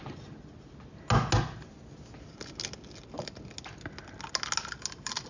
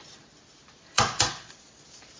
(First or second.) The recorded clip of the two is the first